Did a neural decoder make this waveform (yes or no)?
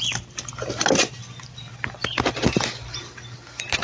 no